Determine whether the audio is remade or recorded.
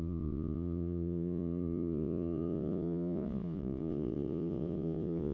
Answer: remade